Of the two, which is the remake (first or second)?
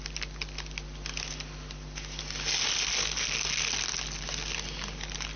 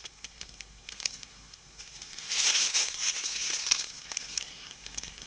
second